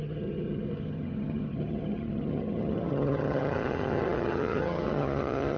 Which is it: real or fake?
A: fake